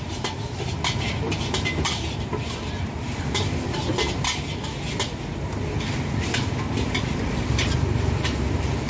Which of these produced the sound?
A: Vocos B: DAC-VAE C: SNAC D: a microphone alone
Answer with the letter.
D